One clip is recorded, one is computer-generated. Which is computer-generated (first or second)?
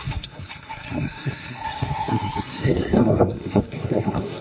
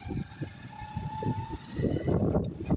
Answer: first